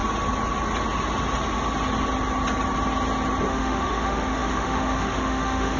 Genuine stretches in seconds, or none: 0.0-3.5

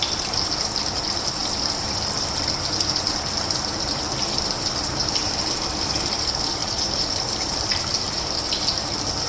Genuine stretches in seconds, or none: 0.0-6.6; 8.3-9.3